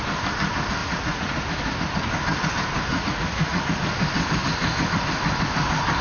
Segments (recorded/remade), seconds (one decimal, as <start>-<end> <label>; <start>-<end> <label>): 0.0-0.8 recorded; 0.8-1.4 remade; 1.4-2.9 recorded; 2.9-3.6 remade; 3.6-6.0 recorded